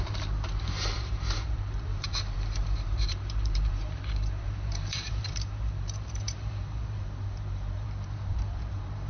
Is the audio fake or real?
fake